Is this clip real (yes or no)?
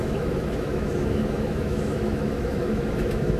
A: no